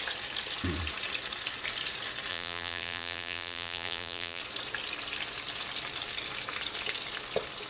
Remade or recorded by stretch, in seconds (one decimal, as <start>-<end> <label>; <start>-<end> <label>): 0.0-2.3 recorded; 2.3-4.4 remade; 4.4-7.7 recorded